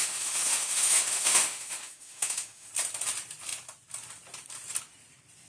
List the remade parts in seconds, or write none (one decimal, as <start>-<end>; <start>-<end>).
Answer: 0.0-2.7